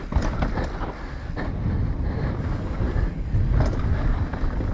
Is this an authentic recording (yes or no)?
yes